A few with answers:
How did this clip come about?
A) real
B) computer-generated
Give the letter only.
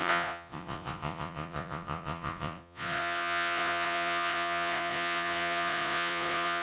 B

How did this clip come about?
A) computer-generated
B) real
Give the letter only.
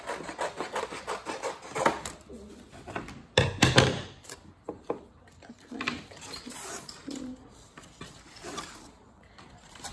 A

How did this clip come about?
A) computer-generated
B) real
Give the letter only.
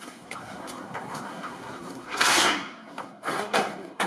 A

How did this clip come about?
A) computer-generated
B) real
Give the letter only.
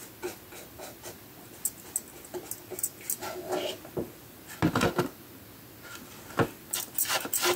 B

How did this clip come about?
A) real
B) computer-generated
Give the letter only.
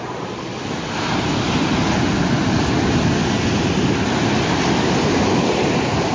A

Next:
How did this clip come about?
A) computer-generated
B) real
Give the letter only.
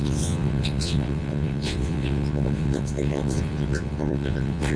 A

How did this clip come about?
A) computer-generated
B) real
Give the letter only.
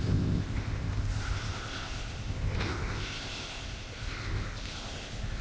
A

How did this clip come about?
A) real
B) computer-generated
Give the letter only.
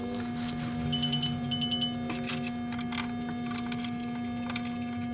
A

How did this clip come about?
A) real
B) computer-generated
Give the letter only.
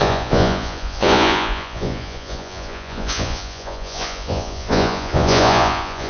B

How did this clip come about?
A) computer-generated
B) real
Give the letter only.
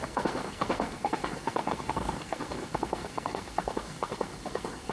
A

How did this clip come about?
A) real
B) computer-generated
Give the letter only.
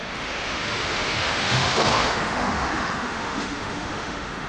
B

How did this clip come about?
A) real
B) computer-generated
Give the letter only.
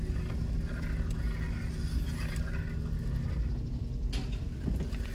A